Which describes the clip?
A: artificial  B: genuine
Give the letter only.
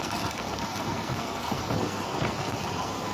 A